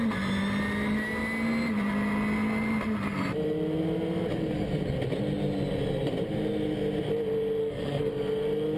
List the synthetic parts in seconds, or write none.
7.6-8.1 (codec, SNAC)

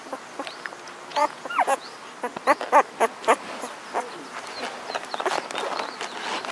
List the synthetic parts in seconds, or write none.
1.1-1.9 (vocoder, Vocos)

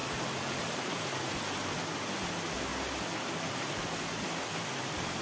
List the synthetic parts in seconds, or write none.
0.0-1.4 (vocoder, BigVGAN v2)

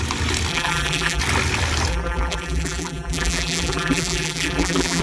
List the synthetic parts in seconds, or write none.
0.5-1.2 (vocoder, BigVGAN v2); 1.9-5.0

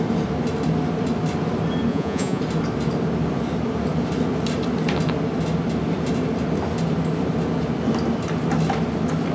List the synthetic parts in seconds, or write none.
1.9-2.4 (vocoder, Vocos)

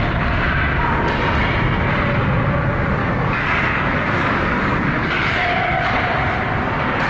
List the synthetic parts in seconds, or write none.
3.0-5.9 (codec, DAC)

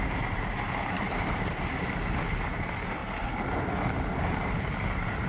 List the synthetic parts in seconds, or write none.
0.0-3.0 (vocoder, BigVGAN v2); 4.3-5.3

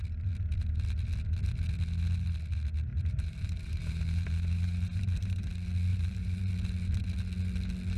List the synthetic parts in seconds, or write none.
2.9-5.5 (vocoder, BigVGAN v2); 5.9-6.5